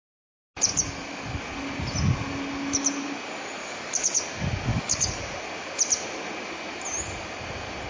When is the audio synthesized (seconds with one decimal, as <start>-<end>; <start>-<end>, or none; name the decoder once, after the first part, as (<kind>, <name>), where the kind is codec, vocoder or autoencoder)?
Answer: 0.7-1.4 (codec, DAC); 3.6-4.2; 4.7-5.2